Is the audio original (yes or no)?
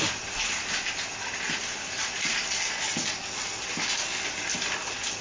yes